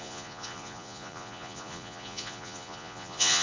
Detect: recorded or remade remade